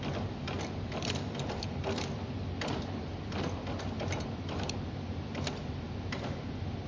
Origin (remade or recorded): recorded